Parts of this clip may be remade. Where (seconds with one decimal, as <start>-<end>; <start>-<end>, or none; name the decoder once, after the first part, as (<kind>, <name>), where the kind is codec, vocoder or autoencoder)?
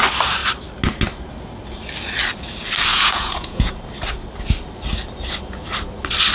2.9-3.7 (vocoder, Vocos)